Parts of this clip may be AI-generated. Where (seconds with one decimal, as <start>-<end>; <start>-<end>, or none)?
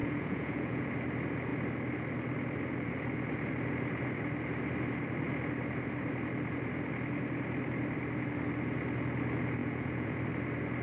0.0-0.9; 9.6-10.2